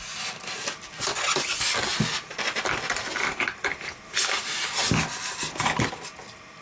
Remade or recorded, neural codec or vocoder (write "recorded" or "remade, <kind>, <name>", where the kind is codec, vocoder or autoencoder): recorded